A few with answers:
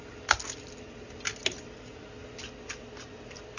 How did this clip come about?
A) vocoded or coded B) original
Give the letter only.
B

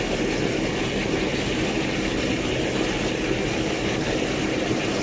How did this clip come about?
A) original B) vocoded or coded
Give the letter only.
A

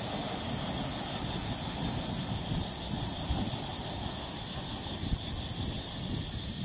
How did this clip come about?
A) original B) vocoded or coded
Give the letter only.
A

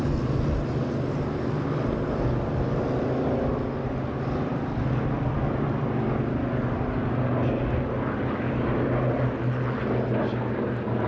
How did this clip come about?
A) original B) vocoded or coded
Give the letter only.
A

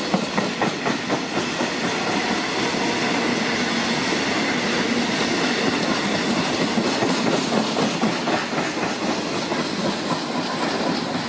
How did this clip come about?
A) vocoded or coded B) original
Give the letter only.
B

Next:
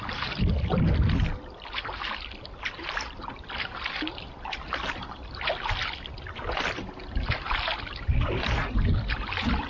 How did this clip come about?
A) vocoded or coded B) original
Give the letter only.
B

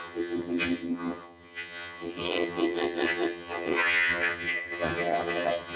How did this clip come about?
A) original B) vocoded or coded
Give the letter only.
B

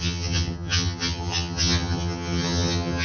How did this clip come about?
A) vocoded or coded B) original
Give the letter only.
A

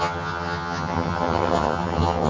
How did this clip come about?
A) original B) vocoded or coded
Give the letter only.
B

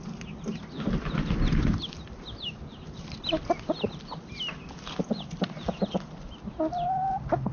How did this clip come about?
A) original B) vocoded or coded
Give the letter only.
A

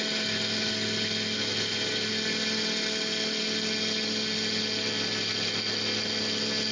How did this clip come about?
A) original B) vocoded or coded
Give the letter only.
A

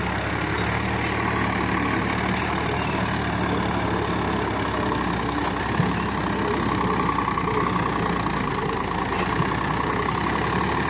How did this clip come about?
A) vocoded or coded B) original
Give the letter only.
B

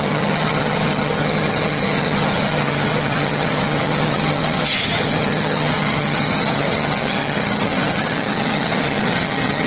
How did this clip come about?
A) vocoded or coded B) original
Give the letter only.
A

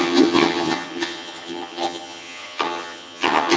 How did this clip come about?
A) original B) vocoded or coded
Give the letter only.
B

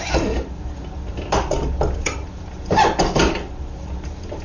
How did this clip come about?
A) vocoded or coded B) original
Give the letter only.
B